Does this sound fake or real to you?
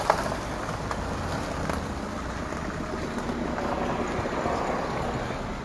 real